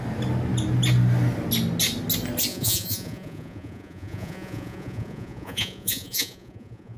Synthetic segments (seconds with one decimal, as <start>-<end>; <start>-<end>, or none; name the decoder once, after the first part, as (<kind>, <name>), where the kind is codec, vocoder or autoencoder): 2.5-7.0 (vocoder, Vocos)